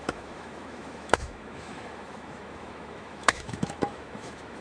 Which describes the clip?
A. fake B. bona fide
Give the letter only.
A